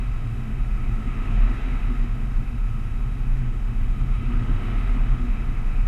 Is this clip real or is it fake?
fake